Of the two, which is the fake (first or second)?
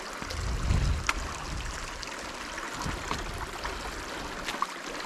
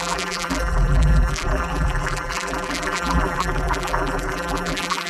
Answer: second